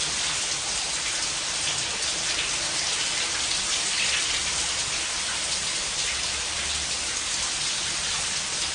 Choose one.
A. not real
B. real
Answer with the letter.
B